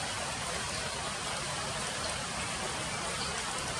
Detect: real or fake real